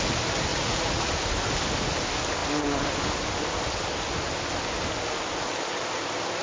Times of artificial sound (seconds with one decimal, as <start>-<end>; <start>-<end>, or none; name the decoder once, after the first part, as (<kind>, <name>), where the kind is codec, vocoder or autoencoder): 0.5-1.1 (vocoder, Vocos)